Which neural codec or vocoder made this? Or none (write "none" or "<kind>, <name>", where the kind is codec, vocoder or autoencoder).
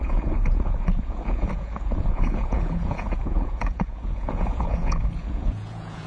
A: vocoder, Vocos